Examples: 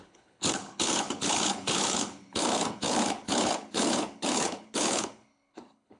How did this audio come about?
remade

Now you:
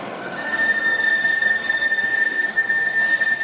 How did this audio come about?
remade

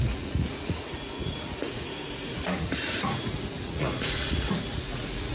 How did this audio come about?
remade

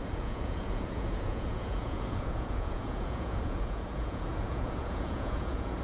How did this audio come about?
remade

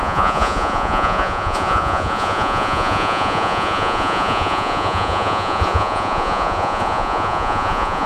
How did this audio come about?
remade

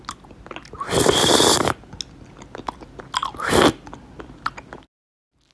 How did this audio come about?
recorded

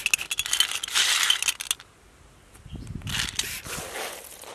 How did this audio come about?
recorded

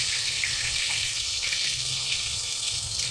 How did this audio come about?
remade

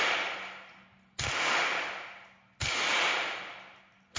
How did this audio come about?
recorded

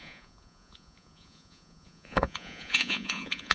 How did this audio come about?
remade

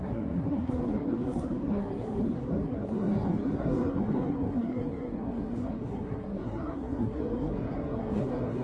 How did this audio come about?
remade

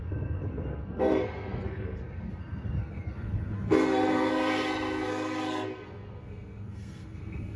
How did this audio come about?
remade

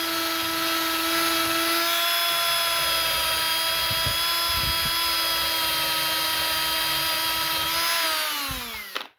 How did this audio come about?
recorded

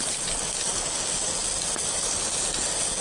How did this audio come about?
recorded